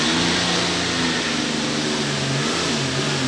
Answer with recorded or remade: recorded